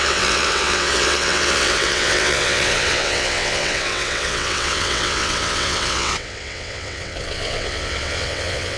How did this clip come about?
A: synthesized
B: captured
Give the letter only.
A